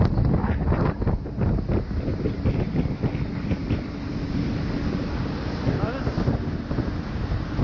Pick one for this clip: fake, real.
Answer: real